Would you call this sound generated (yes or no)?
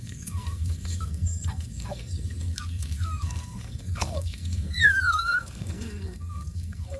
yes